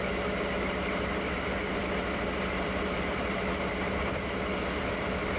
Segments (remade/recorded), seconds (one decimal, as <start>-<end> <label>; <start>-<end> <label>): 0.0-5.4 recorded